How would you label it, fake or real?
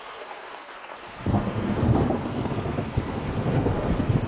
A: fake